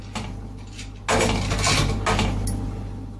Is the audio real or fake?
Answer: real